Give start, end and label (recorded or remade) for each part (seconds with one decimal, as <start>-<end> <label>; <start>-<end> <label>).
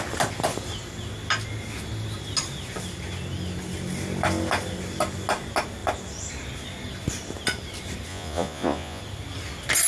0.0-8.1 recorded; 8.1-9.0 remade; 9.0-9.9 recorded